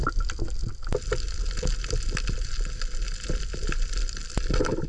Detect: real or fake real